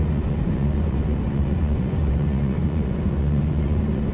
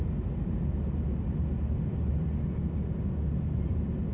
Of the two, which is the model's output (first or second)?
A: first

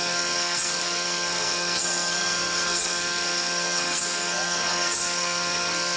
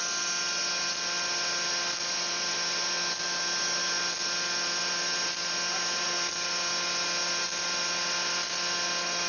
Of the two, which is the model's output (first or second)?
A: first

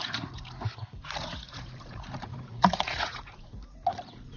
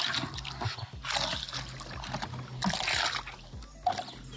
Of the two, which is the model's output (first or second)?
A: first